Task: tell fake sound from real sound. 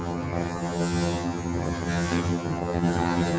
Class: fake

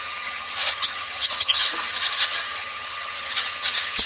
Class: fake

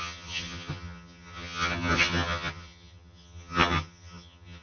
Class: fake